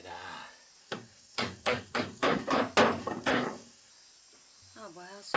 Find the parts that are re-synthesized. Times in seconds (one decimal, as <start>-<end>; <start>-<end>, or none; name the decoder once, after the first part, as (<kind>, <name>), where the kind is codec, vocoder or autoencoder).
0.8-2.6 (codec, SNAC); 3.0-3.9